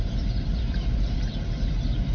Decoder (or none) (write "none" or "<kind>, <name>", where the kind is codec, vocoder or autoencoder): none